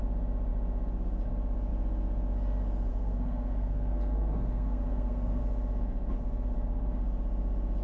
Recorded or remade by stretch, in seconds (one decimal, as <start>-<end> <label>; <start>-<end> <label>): 0.0-2.9 recorded; 2.9-5.4 remade; 5.4-7.8 recorded